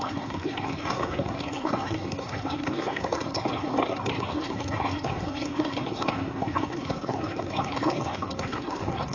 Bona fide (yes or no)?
no